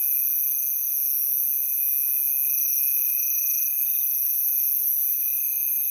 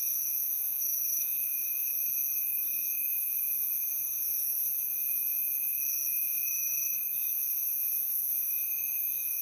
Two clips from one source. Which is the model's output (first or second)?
second